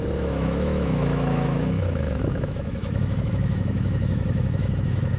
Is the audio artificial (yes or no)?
yes